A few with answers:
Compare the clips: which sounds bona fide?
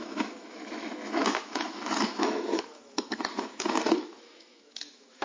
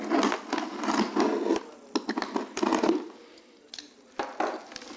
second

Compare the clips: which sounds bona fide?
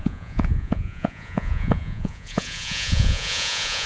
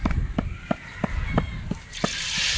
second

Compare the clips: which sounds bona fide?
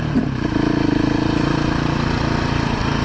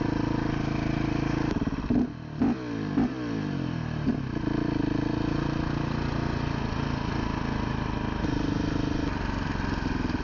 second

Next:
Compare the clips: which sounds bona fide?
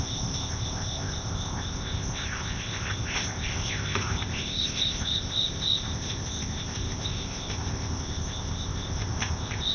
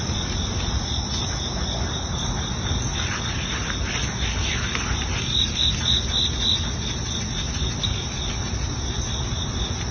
second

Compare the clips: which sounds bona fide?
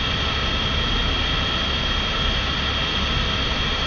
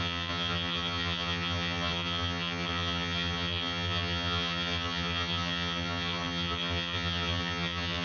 first